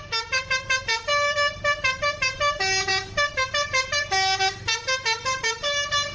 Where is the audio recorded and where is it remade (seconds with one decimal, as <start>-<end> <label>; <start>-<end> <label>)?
0.0-6.1 recorded